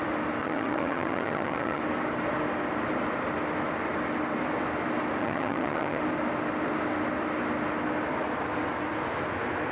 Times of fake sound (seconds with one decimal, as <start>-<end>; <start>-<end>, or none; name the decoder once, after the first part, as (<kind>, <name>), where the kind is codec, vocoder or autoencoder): 0.4-1.8 (vocoder, HiFi-GAN); 5.2-6.0